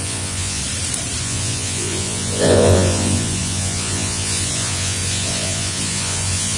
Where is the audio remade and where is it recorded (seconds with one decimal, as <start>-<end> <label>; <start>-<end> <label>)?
0.0-0.6 remade; 0.6-1.2 recorded; 1.2-6.6 remade